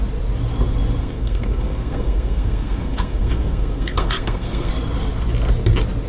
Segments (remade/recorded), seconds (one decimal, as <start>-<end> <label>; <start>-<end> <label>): 0.0-1.0 recorded; 1.0-4.7 remade; 4.7-6.1 recorded